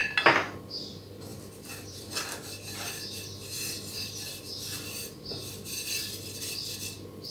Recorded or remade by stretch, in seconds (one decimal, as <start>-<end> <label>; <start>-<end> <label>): 0.0-0.6 recorded; 0.6-7.3 remade